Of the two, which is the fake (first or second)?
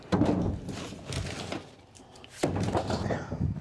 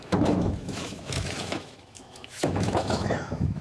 second